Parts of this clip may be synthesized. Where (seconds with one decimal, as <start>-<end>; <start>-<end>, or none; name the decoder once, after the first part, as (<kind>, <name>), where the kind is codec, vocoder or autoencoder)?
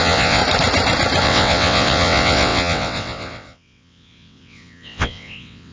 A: 0.0-0.4 (vocoder, WaveNeXt); 1.2-5.7